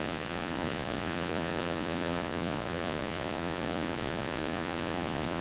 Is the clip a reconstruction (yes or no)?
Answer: yes